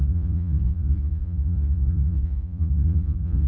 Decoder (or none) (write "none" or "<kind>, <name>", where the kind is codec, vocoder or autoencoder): vocoder, Vocos